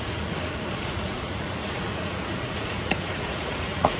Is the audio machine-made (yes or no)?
yes